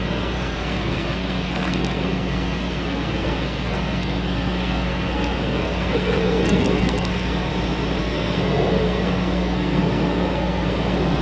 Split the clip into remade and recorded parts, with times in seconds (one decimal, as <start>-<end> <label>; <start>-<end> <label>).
0.0-7.5 remade; 7.5-8.0 recorded; 8.0-11.2 remade